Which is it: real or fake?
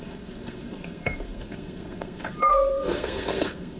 fake